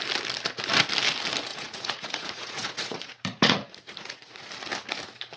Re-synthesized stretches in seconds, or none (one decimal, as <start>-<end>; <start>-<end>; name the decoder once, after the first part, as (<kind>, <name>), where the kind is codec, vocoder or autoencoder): 1.5-4.5 (vocoder, Vocos)